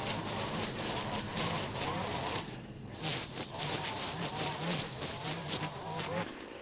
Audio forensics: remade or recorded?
remade